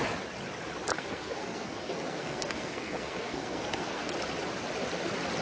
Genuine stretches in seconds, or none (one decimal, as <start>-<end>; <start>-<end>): 0.0-0.9; 4.1-5.4